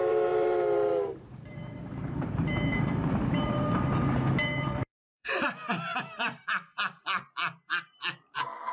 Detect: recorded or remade remade